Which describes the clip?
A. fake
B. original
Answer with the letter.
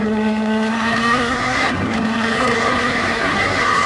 A